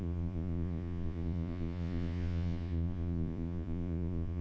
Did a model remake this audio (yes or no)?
yes